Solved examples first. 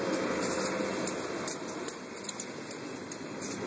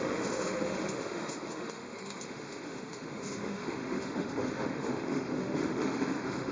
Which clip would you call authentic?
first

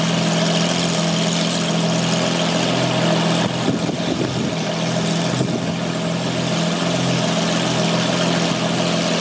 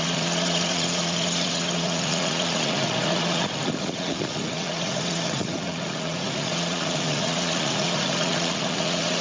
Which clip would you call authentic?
first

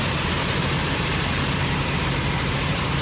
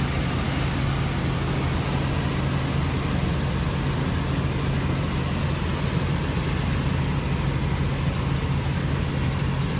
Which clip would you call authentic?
second